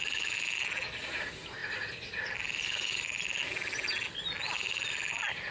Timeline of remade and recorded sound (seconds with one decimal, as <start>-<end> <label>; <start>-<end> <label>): 0.0-5.5 recorded